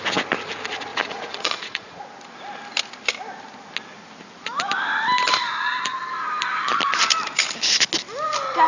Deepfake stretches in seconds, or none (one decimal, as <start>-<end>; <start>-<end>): 0.9-2.0